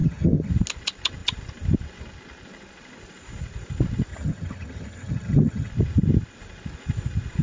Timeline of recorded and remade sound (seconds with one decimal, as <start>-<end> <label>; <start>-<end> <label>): 0.0-0.5 remade; 0.5-4.1 recorded; 4.1-5.7 remade; 5.7-7.4 recorded